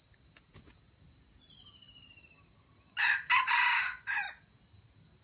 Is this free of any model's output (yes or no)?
yes